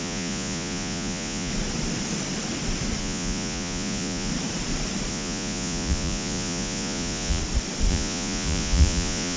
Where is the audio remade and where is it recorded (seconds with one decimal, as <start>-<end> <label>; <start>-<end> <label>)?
0.0-1.5 remade; 1.5-3.0 recorded; 3.0-4.3 remade; 4.3-5.1 recorded; 5.1-7.4 remade; 7.4-7.9 recorded; 7.9-9.4 remade